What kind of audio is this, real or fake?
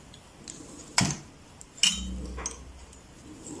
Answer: real